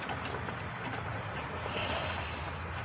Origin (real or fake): real